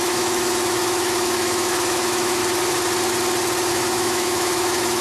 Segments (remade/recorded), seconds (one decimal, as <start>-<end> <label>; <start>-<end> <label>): 0.0-2.4 remade; 2.4-3.7 recorded; 3.7-5.0 remade